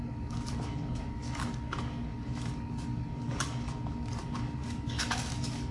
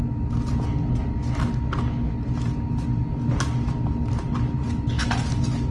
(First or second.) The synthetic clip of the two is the first